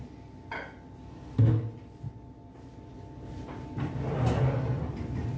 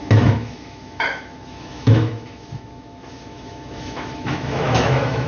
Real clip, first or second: first